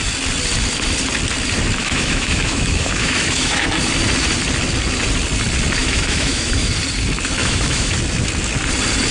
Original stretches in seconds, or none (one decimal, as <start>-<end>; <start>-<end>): 0.0-1.8; 3.8-5.8; 6.7-7.4; 7.9-9.1